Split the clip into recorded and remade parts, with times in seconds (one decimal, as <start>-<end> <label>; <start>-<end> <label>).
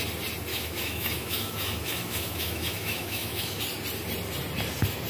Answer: 0.0-0.5 recorded; 0.5-3.6 remade; 3.6-5.1 recorded